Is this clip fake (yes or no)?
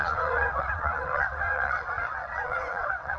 yes